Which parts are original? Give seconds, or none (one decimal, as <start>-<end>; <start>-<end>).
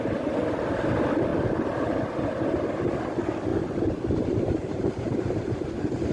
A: 0.0-3.5